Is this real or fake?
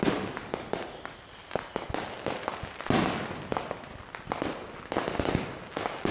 real